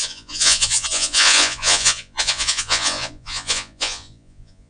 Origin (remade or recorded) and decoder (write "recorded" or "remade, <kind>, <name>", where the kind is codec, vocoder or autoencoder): remade, vocoder, Vocos